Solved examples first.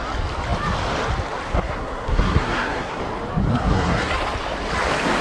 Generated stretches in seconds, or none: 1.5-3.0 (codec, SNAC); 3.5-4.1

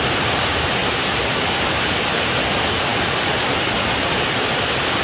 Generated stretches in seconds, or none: none

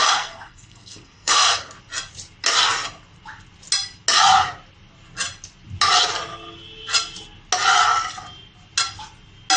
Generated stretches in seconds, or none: 0.0-1.7 (codec, SNAC)

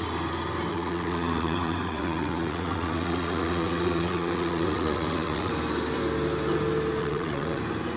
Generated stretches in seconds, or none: 0.7-5.5 (vocoder, WaveNeXt); 7.0-7.6

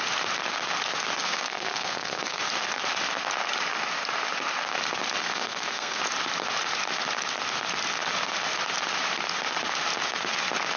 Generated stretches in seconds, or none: 1.2-2.4 (codec, SNAC); 5.2-6.0

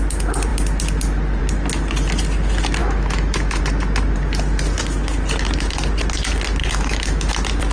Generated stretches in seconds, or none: 2.8-3.6 (autoencoder, DAC-VAE); 6.6-7.3

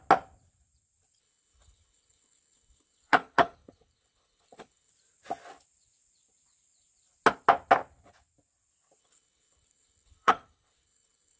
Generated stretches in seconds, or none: 1.2-4.9 (codec, HILCodec); 9.0-11.4